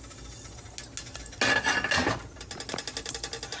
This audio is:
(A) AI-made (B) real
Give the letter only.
B